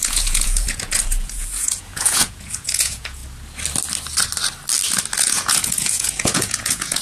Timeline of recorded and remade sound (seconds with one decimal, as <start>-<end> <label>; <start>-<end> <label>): 0.0-3.2 remade; 3.2-5.2 recorded; 5.2-7.0 remade